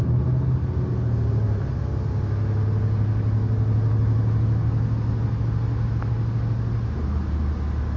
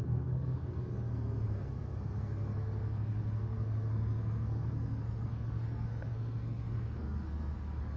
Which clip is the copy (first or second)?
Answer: second